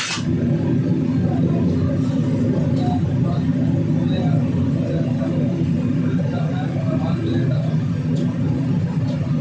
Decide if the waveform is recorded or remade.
recorded